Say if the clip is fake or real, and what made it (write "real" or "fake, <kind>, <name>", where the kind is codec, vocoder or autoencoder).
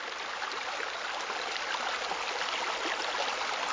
real